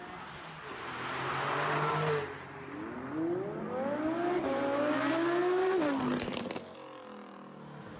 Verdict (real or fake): real